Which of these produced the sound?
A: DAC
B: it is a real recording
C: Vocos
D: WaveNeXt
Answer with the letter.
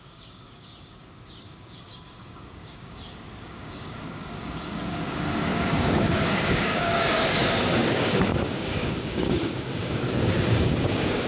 A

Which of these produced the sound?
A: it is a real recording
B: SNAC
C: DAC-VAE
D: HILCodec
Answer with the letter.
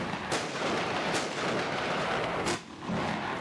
A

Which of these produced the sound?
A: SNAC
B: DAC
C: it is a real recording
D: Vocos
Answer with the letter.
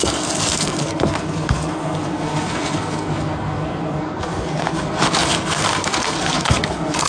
A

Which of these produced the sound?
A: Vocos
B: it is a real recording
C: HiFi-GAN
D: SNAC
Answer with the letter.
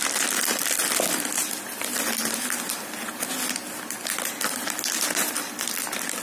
B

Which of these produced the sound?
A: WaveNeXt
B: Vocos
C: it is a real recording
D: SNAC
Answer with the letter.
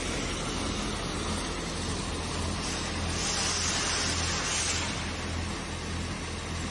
C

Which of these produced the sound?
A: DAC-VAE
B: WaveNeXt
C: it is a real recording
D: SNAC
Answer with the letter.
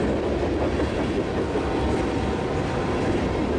C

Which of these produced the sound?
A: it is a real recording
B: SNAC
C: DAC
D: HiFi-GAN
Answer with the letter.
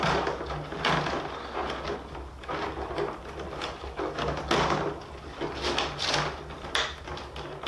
A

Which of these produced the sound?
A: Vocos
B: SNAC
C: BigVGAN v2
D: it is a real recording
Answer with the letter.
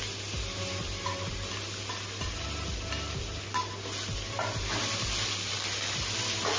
D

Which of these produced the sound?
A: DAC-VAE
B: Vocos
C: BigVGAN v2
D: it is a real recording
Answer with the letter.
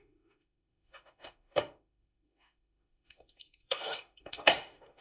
A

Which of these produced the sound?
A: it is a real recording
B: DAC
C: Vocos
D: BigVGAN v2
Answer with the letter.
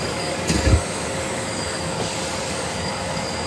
B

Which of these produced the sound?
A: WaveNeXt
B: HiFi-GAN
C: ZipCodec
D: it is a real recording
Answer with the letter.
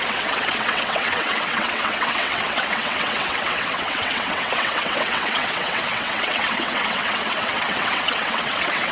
A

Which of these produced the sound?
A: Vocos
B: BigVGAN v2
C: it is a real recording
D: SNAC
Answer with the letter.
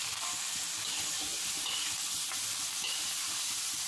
B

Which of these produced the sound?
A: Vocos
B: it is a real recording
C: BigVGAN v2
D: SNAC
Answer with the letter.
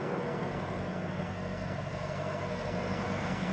D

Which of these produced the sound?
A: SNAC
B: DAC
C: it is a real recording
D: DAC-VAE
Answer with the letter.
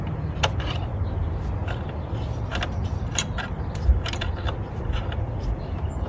C